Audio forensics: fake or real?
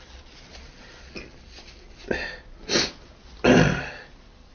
real